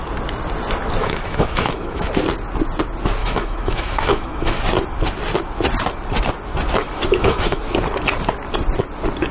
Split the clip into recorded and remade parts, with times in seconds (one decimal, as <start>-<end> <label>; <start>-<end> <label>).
0.0-1.0 recorded; 1.0-2.1 remade; 2.1-3.2 recorded; 3.2-4.6 remade; 4.6-6.8 recorded; 6.8-7.6 remade; 7.6-9.3 recorded